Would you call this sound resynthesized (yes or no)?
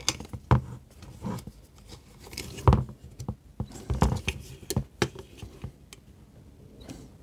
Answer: no